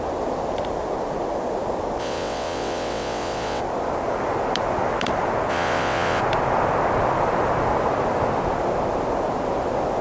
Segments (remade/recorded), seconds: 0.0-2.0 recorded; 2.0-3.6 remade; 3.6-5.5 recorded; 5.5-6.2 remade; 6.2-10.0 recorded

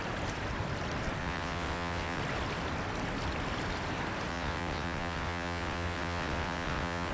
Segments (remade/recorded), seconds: 0.0-1.2 recorded; 1.2-2.2 remade; 2.2-4.3 recorded; 4.3-7.1 remade